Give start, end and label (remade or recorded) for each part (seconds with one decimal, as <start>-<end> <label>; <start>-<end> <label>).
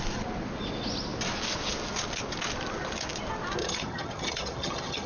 0.0-3.6 recorded; 3.6-5.1 remade